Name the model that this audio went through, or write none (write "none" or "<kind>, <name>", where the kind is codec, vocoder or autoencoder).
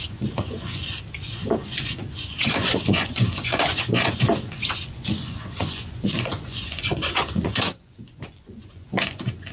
vocoder, Vocos